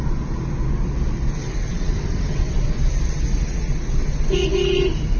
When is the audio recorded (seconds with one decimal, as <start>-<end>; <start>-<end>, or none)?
0.0-1.4; 2.5-5.2

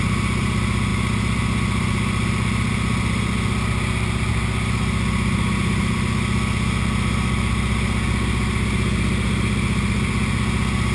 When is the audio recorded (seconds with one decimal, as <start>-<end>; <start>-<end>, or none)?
0.0-10.9

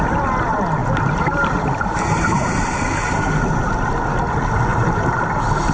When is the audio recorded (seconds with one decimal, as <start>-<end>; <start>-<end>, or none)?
0.0-4.7; 5.2-5.7

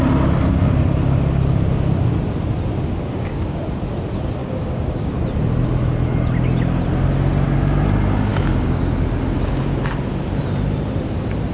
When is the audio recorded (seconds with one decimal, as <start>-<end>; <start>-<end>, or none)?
0.0-3.0; 3.6-4.4; 5.1-8.3; 8.8-11.5

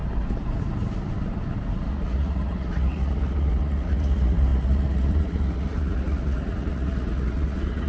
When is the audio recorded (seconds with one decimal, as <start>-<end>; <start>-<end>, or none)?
0.0-1.9

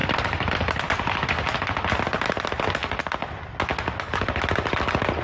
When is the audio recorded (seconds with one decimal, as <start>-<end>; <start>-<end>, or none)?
0.0-5.2

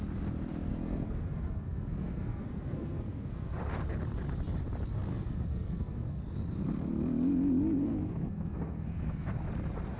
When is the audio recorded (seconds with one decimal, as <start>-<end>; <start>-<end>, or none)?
0.0-0.7; 3.6-5.1; 6.2-7.8; 9.3-10.0